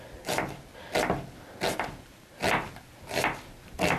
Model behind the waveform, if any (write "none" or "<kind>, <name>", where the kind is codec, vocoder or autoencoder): none